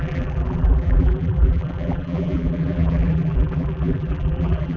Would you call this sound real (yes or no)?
no